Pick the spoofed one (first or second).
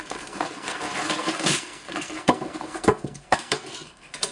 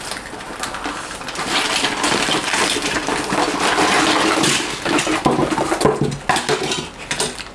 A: first